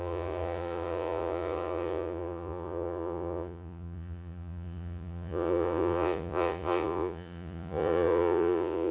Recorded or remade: remade